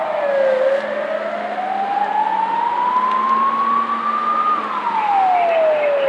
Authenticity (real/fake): real